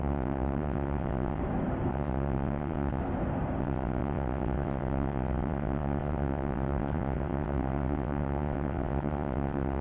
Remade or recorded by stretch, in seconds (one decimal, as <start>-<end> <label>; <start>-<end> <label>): 0.0-1.4 remade; 1.4-1.9 recorded; 1.9-3.0 remade; 3.0-3.6 recorded; 3.6-9.8 remade